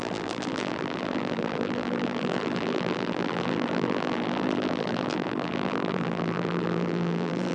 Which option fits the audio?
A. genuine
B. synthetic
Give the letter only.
B